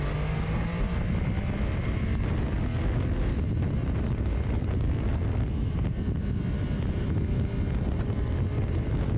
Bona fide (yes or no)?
yes